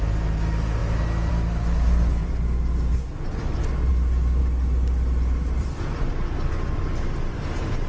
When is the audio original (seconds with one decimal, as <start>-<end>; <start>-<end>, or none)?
0.0-7.9